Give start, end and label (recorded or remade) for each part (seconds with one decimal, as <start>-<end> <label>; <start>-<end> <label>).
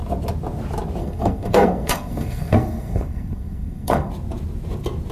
0.0-1.0 recorded; 1.0-4.1 remade; 4.1-5.1 recorded